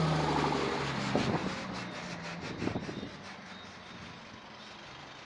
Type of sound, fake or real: real